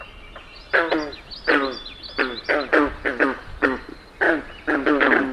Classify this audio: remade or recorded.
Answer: recorded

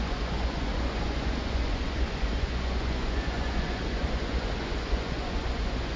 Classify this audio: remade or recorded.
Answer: remade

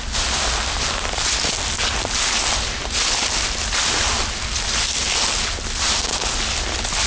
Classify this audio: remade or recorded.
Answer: recorded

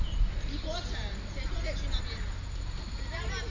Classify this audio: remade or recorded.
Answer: recorded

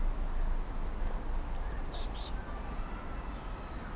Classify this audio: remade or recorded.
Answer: recorded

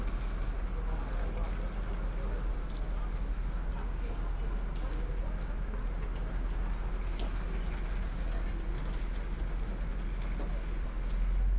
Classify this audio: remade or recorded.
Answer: recorded